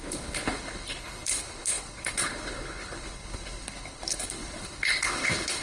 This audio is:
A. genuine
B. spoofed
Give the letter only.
B